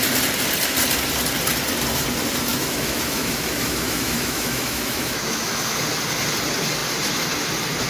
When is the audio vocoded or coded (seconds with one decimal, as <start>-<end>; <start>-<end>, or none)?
2.5-5.8